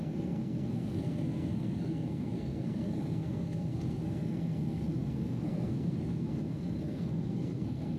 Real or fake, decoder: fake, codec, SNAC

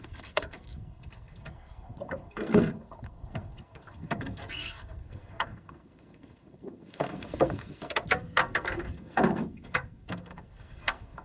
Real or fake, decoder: fake, codec, SNAC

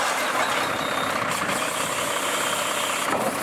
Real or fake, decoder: real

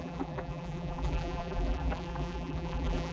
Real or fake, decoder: fake, vocoder, BigVGAN v2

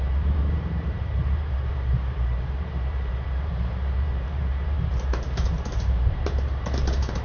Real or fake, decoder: fake, vocoder, BigVGAN v2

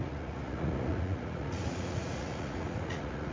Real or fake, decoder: fake, vocoder, Vocos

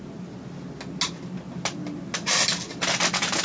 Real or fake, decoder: real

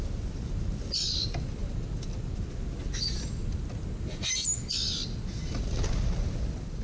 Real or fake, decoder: real